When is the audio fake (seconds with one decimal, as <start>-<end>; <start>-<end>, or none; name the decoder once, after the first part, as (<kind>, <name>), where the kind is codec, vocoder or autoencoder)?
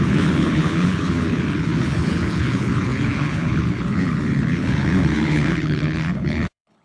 0.0-6.8 (codec, HILCodec)